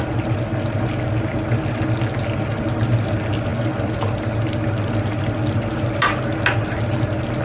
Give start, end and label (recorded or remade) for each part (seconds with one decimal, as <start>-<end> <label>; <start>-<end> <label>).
0.0-7.4 recorded

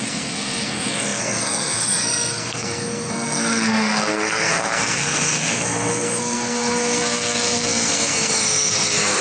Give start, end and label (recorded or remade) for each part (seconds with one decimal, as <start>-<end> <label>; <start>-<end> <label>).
0.0-9.2 remade

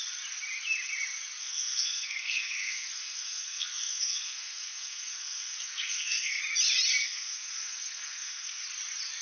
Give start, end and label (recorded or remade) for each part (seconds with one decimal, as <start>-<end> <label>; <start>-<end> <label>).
0.0-1.4 recorded; 1.4-6.4 remade; 6.4-7.0 recorded; 7.0-8.6 remade; 8.6-9.2 recorded